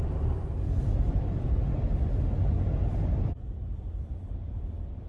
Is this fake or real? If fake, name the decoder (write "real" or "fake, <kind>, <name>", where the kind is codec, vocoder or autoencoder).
fake, vocoder, BigVGAN v2